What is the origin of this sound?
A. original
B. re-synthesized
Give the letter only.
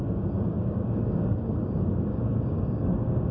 B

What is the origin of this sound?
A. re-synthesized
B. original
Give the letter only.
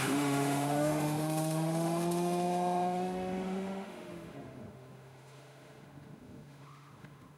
A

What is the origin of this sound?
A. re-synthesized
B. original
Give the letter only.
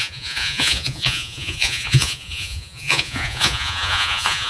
A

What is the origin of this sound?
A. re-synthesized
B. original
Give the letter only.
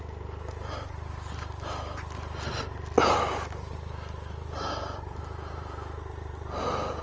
B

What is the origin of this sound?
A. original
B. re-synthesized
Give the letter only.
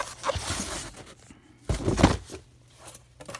A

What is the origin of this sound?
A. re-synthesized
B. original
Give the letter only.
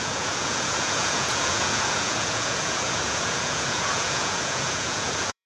A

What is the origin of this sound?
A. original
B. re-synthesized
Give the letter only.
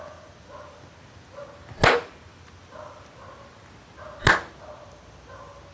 A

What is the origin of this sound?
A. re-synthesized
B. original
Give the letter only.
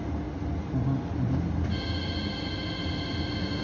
B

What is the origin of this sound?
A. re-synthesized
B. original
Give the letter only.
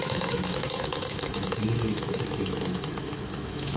A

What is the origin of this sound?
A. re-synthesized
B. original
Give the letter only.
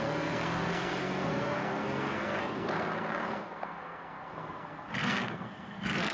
A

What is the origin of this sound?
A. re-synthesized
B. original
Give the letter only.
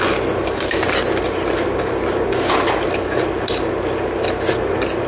B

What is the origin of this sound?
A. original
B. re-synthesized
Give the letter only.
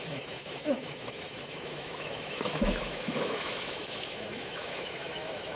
B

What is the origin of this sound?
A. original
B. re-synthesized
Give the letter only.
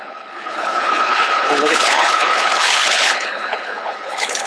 B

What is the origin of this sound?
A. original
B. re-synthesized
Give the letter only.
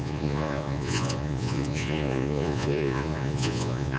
B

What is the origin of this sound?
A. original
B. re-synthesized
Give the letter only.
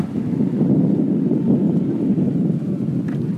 A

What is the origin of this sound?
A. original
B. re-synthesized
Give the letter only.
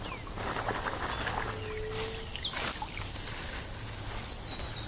A